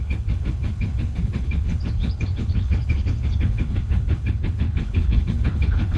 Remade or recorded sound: remade